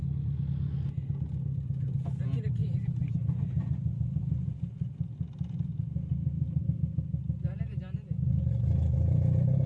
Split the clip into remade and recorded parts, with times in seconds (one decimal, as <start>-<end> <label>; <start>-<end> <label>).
0.0-2.6 recorded; 2.6-4.5 remade; 4.5-5.7 recorded; 5.7-6.6 remade; 6.6-9.7 recorded